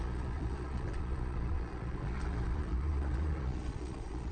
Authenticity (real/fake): fake